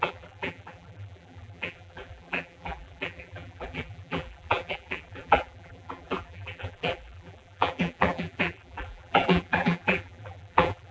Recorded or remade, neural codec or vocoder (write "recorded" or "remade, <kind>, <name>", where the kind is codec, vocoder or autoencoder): remade, vocoder, BigVGAN v2